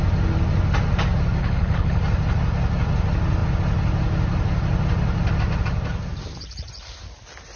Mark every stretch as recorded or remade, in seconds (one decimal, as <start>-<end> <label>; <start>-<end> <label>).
0.0-1.4 recorded; 1.4-2.0 remade; 2.0-7.6 recorded